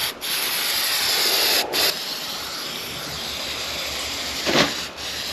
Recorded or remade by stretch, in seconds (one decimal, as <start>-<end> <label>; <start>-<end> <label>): 0.0-3.2 recorded; 3.2-5.3 remade